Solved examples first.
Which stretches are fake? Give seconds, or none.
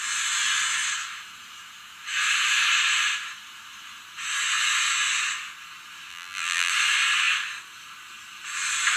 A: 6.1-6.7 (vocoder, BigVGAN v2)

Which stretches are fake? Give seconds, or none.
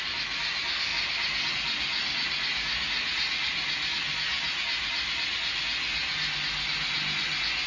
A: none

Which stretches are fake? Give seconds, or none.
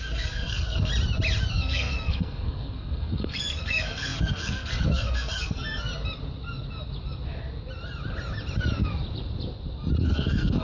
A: 0.0-0.9 (codec, SNAC); 1.5-5.9; 10.0-10.6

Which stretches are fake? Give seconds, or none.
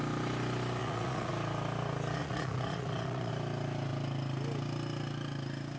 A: 0.8-1.3 (vocoder, Vocos); 2.2-3.3